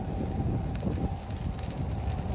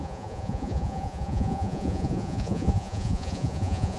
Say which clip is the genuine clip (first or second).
first